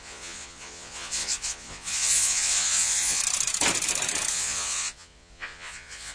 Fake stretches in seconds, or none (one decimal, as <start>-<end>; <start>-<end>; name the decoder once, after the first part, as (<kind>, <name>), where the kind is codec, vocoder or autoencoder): 0.0-3.2 (vocoder, Vocos); 4.3-6.1